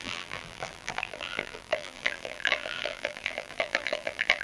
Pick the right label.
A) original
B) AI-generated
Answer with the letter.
B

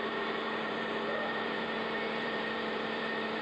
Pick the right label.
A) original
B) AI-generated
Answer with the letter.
B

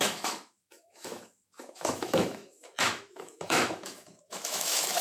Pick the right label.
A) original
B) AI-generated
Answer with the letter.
B